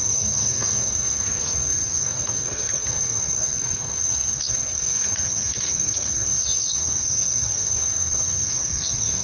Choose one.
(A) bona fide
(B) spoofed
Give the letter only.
B